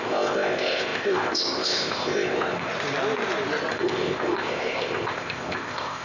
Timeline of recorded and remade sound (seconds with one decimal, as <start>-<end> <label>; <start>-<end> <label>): 0.0-2.7 remade; 2.7-3.7 recorded; 3.7-6.0 remade